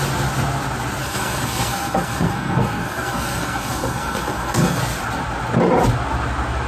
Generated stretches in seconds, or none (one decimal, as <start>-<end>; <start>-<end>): 1.0-4.8